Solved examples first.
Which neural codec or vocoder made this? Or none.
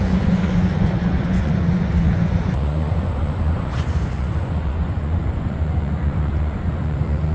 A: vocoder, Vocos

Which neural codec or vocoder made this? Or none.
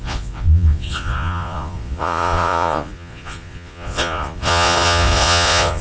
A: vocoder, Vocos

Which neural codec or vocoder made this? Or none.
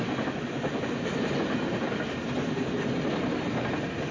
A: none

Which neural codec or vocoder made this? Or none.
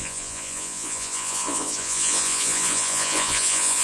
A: vocoder, Vocos